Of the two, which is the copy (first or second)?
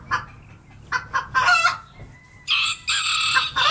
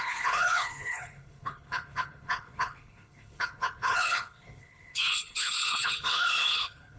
second